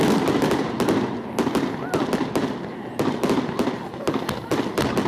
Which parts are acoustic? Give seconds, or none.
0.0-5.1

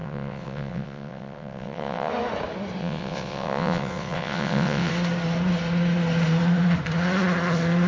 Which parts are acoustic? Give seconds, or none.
2.1-2.8; 4.9-7.9

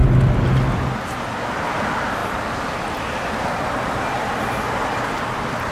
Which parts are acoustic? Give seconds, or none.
0.0-5.7

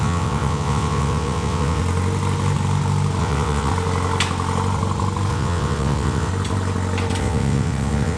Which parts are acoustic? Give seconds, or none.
1.8-3.2; 3.7-5.3; 6.3-7.2